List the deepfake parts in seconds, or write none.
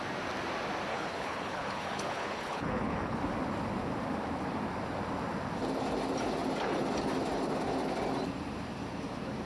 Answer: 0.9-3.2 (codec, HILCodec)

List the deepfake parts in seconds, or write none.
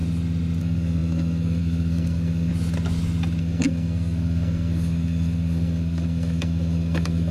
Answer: 0.6-2.5 (codec, SNAC); 3.4-7.3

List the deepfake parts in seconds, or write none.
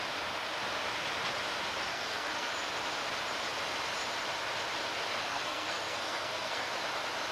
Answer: 1.9-2.5 (codec, SNAC); 5.2-6.7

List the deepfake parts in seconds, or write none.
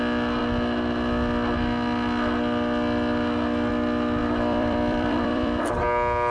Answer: 4.2-5.6 (vocoder, BigVGAN v2)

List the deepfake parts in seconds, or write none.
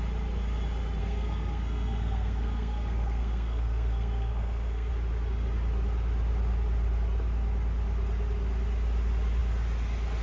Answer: 1.0-4.9 (codec, SNAC)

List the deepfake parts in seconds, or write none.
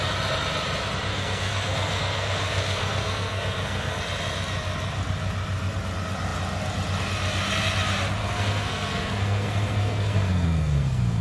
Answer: 1.1-4.0 (codec, SNAC); 8.2-11.2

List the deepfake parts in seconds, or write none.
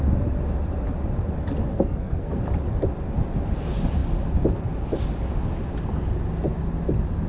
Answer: 1.7-2.4 (codec, SNAC)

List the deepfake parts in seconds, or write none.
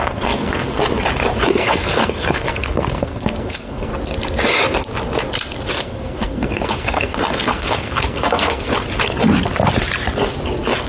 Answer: 0.0-0.9 (codec, SNAC); 1.5-3.9; 5.7-8.7